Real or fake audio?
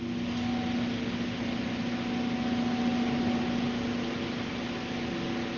real